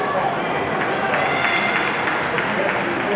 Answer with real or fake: real